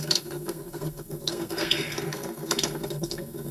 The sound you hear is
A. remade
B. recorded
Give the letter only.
A